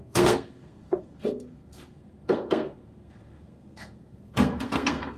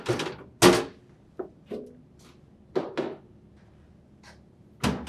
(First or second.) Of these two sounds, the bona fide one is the second